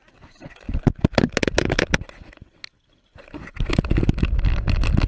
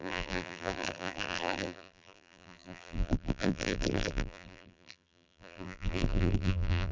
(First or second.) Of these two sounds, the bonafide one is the first